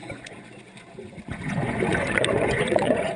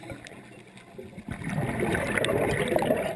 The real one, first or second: second